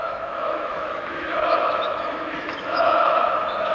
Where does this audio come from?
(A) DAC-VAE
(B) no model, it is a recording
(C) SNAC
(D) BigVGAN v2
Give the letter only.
A